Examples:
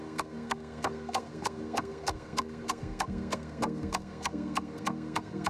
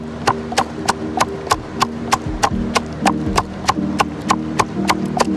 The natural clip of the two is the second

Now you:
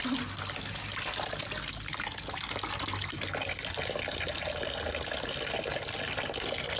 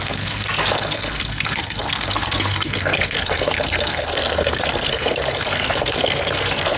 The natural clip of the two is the first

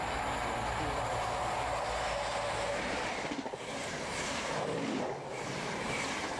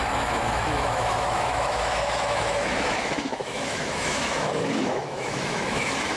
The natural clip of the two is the first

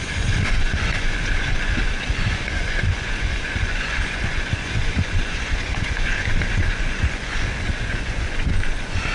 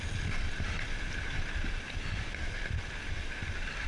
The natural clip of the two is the second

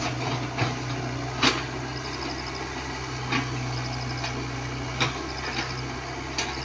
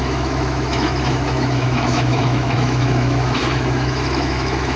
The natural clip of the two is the first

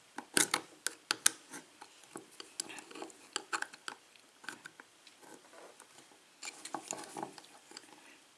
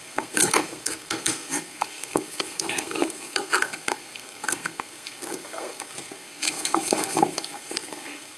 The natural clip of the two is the first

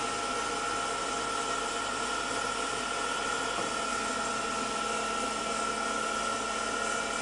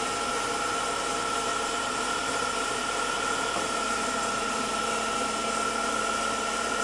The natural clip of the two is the first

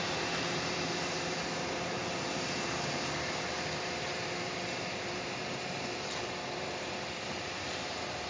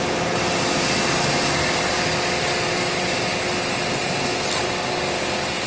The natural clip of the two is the second